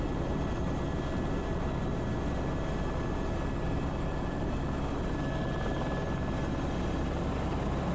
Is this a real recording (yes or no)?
yes